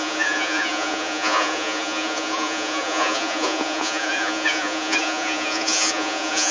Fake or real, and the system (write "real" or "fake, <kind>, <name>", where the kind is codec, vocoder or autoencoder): fake, vocoder, Vocos